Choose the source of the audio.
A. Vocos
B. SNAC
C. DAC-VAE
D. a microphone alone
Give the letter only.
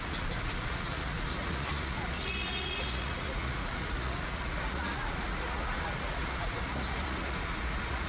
A